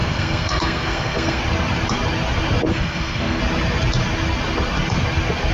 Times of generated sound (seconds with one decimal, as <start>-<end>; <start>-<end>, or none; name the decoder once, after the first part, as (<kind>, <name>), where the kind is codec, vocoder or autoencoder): 0.0-1.4 (codec, SNAC); 2.7-3.4